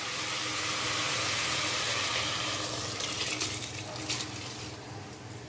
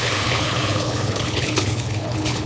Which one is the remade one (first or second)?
second